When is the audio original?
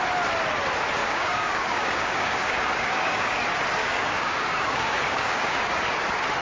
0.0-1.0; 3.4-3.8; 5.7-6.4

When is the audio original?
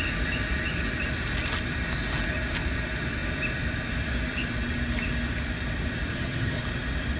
0.0-6.1; 6.6-7.2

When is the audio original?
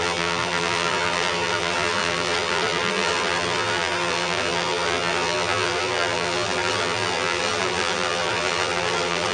none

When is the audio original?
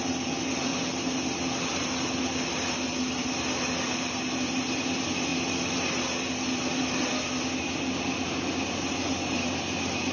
0.0-10.1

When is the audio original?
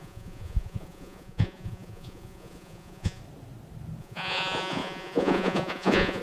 3.2-4.0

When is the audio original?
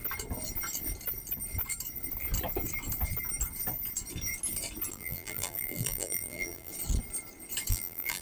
0.0-4.9; 6.7-7.7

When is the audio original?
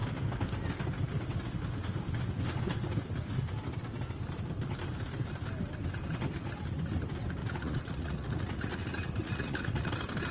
0.0-7.4; 9.9-10.3